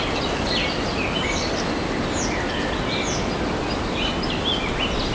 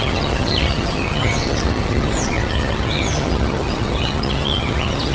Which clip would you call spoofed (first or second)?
second